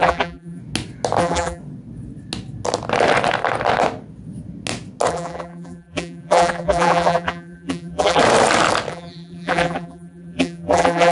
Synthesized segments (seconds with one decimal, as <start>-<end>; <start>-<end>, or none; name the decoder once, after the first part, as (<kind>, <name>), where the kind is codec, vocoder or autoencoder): 0.0-0.6 (vocoder, BigVGAN v2); 1.2-1.6; 5.1-8.2; 8.9-11.1